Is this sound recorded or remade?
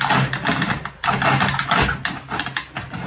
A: recorded